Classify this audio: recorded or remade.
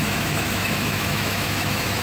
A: remade